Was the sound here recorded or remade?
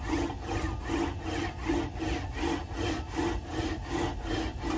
recorded